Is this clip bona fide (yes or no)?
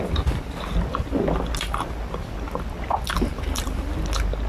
yes